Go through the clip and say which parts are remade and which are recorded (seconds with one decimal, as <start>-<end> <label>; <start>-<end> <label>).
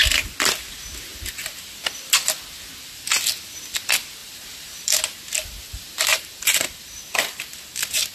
0.0-4.2 recorded; 4.2-5.0 remade; 5.0-6.1 recorded; 6.1-7.0 remade; 7.0-8.1 recorded